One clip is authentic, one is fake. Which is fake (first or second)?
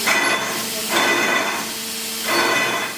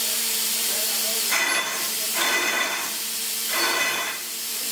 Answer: second